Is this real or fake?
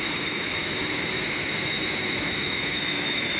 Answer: fake